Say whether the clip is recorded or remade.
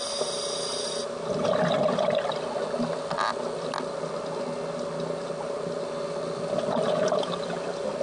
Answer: recorded